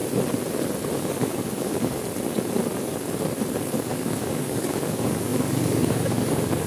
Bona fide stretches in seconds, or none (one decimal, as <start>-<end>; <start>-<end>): 0.0-1.0; 2.0-3.6